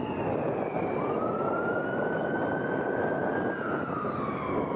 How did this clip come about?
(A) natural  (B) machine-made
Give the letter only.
A